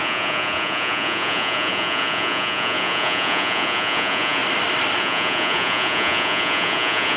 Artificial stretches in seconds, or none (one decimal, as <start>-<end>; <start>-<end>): 0.0-4.4; 5.0-7.2